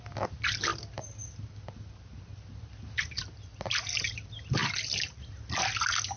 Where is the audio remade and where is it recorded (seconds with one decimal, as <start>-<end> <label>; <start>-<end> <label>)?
0.0-6.2 recorded